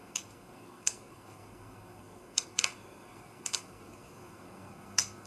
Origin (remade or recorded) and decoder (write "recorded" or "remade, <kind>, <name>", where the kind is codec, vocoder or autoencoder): remade, codec, SNAC